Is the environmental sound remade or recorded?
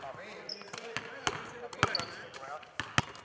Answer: recorded